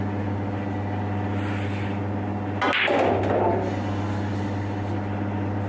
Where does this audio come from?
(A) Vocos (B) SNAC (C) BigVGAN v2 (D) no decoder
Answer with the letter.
D